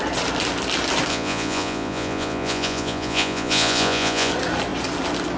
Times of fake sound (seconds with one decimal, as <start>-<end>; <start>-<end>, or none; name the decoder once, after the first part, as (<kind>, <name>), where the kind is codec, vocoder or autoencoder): 1.1-4.3 (vocoder, Vocos)